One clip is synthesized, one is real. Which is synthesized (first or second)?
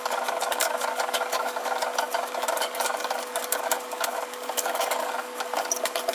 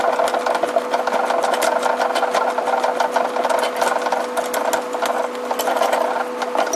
first